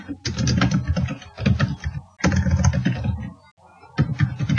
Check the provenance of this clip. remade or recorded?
recorded